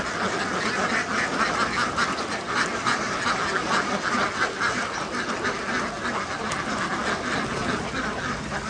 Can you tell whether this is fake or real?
real